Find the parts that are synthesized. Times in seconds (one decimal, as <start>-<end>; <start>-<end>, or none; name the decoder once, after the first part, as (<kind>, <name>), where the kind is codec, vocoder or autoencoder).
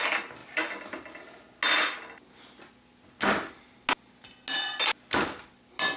none